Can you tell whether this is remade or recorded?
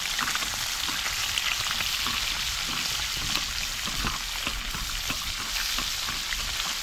recorded